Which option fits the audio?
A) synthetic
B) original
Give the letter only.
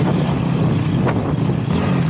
B